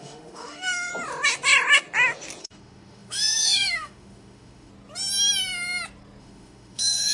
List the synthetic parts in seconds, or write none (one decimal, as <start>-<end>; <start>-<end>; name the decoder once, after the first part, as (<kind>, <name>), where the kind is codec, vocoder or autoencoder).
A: 0.0-0.9 (autoencoder, DAC-VAE); 2.4-4.7; 6.2-7.1